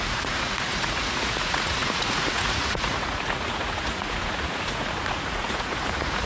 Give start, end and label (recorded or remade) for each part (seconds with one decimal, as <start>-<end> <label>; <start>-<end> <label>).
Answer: 0.0-6.3 remade